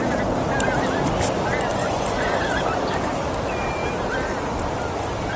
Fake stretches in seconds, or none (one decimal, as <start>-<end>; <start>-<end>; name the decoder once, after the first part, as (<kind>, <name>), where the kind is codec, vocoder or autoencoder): 1.7-2.6 (vocoder, Vocos)